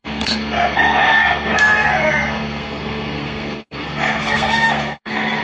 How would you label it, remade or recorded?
remade